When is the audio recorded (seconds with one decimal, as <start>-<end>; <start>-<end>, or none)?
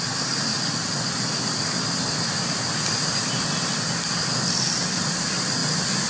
0.0-6.1